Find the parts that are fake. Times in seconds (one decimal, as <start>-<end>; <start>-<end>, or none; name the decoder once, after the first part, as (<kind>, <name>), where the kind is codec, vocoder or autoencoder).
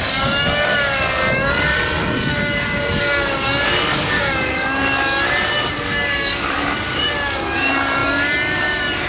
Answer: 0.0-1.7 (codec, DAC); 2.3-9.1